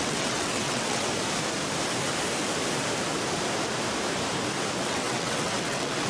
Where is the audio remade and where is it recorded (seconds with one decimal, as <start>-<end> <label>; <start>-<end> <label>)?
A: 0.0-1.1 remade; 1.1-4.8 recorded; 4.8-6.1 remade